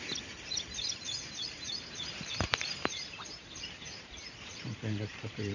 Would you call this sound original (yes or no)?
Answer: no